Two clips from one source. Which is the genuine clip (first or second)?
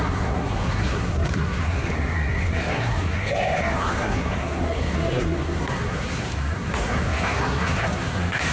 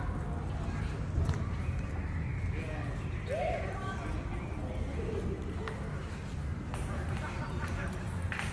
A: second